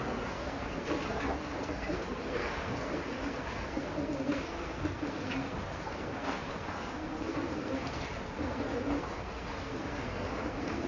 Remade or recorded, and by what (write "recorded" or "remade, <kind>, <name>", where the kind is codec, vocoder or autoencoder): remade, codec, SNAC